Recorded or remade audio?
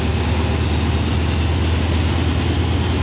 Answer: recorded